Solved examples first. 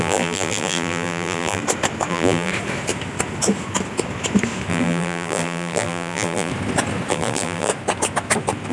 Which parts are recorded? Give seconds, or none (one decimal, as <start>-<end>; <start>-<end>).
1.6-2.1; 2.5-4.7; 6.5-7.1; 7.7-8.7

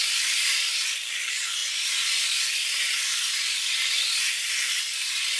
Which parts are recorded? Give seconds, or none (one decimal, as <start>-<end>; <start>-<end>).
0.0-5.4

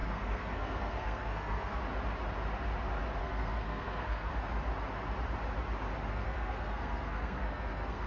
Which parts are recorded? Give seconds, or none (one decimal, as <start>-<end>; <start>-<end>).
1.8-3.2; 4.3-6.1